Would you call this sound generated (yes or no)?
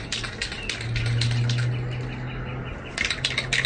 no